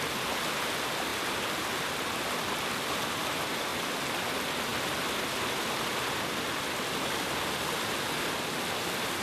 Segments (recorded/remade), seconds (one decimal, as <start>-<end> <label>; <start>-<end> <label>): 0.0-9.2 recorded